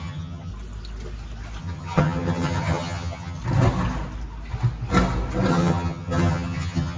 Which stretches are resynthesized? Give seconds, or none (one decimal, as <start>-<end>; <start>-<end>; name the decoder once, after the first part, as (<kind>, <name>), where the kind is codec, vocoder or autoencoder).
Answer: 0.0-0.5 (vocoder, HiFi-GAN); 1.6-3.4; 5.5-7.0